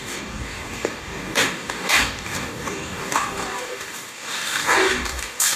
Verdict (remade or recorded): remade